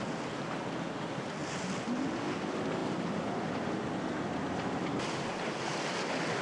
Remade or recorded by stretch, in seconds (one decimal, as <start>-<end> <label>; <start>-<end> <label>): 0.0-6.4 recorded